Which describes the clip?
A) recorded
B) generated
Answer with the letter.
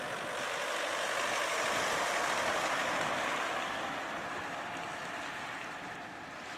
A